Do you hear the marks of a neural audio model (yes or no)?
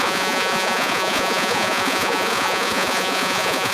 yes